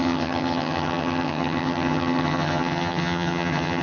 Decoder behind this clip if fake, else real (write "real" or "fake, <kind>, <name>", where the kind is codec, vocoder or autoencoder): fake, vocoder, HiFi-GAN